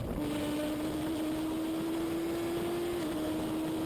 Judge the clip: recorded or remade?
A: recorded